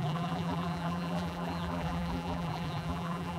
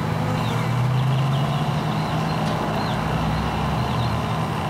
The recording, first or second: second